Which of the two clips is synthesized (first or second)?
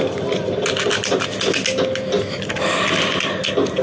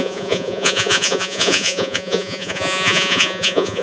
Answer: second